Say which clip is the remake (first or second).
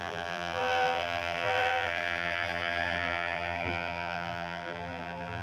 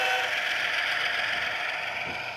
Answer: first